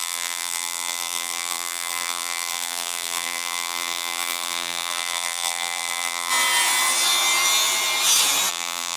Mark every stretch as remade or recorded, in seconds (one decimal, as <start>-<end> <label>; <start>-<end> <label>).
0.0-6.3 remade; 6.3-8.5 recorded; 8.5-9.0 remade

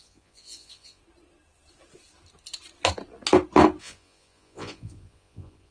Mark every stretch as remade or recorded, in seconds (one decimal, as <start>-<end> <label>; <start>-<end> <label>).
0.0-1.0 remade; 1.0-3.8 recorded; 3.8-5.7 remade